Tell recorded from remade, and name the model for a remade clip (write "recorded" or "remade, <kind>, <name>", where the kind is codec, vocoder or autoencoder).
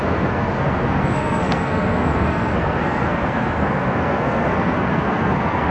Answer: remade, codec, SNAC